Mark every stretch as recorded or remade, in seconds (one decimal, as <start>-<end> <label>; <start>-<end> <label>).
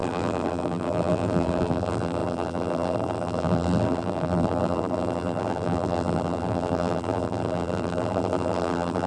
0.0-9.1 remade